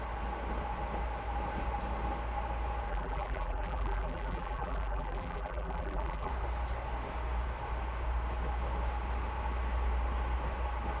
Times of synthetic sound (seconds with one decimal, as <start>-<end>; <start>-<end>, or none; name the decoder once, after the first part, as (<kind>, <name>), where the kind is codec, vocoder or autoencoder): 2.9-6.3 (vocoder, BigVGAN v2)